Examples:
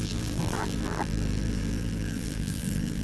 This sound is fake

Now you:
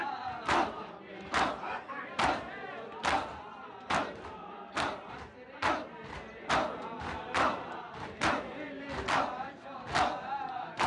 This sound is real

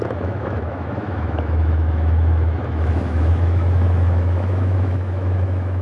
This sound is fake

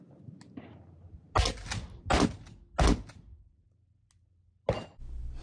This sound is real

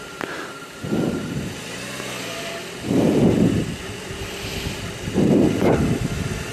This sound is real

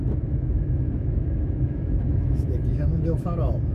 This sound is fake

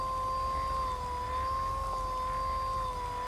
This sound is real